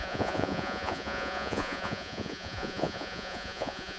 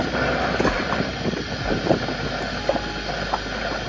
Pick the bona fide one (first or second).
second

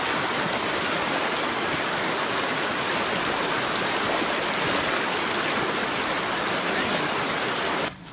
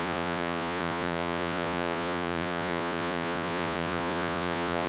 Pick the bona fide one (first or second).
first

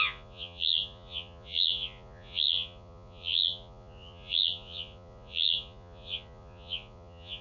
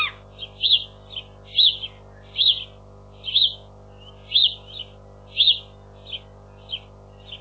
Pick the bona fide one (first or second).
second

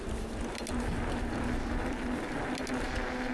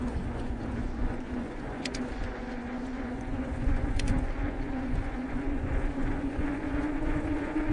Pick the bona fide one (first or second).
first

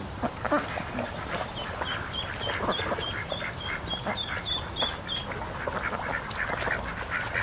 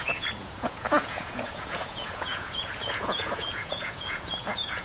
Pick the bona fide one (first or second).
first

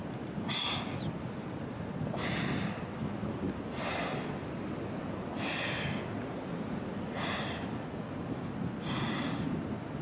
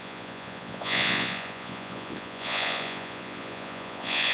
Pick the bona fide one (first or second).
first